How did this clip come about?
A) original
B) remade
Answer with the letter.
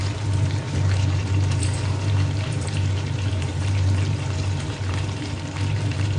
B